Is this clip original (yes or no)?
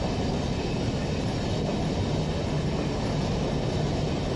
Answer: yes